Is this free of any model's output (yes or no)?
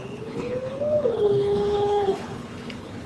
no